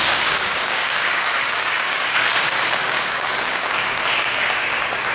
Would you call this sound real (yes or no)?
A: no